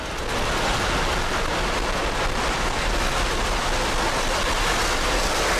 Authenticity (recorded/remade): recorded